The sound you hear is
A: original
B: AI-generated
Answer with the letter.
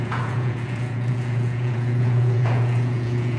B